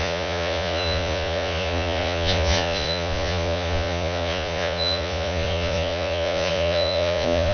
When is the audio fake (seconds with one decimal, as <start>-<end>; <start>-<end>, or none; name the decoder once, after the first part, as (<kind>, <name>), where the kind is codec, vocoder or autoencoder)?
0.0-7.5 (vocoder, Vocos)